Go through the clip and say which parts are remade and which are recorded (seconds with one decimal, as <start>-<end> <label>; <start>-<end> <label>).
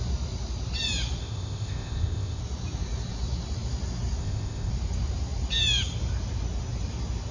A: 0.0-1.2 recorded; 1.2-2.4 remade; 2.4-4.2 recorded; 4.2-4.7 remade; 4.7-7.3 recorded